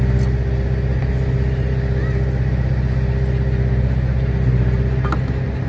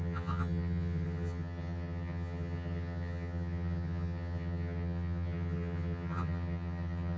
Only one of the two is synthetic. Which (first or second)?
second